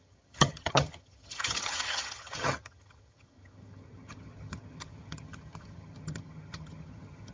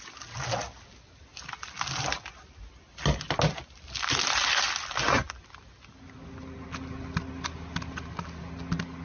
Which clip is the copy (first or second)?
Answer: first